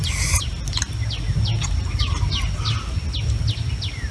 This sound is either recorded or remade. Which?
recorded